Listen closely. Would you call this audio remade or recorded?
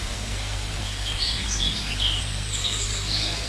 remade